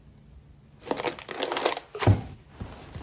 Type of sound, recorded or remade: recorded